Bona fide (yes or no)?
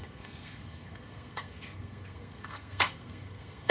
no